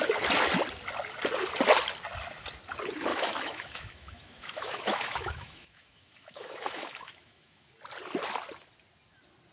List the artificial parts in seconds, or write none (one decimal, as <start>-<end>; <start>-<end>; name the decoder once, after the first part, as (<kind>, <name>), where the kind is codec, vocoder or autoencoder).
3.1-7.7 (autoencoder, DAC-VAE)